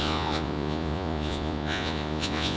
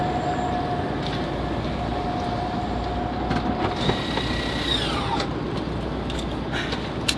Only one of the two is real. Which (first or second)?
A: second